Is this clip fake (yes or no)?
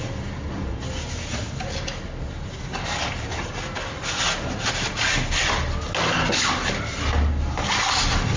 no